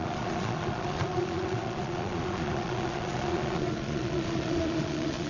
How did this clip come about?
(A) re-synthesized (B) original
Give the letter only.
A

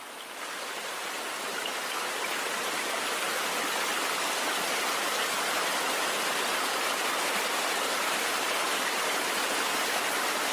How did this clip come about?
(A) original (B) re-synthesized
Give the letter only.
A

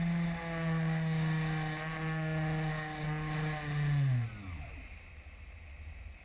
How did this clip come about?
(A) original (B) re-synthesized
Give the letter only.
A